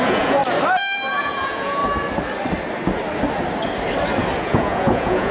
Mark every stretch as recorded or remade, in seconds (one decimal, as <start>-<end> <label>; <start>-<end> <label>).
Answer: 0.0-0.4 remade; 0.4-1.2 recorded; 1.2-1.8 remade; 1.8-4.4 recorded; 4.4-5.3 remade